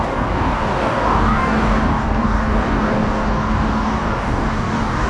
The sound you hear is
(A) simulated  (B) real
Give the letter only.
A